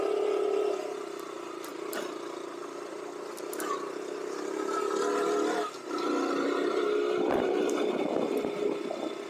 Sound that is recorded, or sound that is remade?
recorded